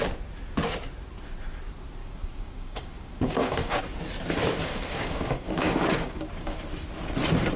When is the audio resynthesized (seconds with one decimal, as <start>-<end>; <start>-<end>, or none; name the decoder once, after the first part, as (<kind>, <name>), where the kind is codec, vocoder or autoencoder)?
2.0-3.8 (codec, DAC); 4.6-6.6